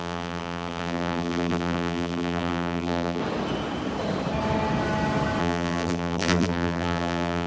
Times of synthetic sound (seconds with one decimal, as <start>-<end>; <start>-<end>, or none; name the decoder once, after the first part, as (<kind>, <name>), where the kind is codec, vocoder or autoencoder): 0.0-3.2 (vocoder, BigVGAN v2); 5.4-7.5

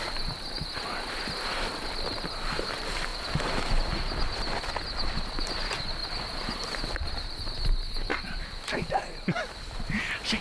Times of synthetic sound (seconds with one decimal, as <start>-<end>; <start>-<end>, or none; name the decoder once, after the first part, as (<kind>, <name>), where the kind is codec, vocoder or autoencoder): 0.0-3.1 (vocoder, BigVGAN v2); 5.3-10.4

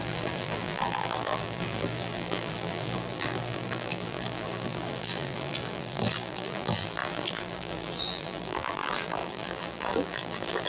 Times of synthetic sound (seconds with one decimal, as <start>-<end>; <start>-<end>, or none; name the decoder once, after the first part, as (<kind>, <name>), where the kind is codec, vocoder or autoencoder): 0.0-10.7 (vocoder, BigVGAN v2)

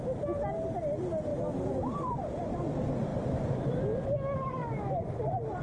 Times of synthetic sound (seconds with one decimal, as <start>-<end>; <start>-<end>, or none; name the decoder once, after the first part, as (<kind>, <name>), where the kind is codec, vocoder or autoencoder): 1.3-2.5 (vocoder, BigVGAN v2); 3.1-3.8

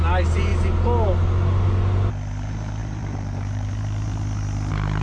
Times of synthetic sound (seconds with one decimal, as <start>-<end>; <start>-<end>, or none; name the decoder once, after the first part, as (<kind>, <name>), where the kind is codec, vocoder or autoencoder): 2.8-3.7 (vocoder, BigVGAN v2)